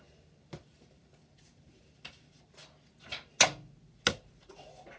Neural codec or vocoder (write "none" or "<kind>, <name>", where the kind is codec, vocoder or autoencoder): none